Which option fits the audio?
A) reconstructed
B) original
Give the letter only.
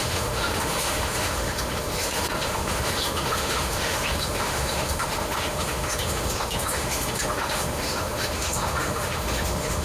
A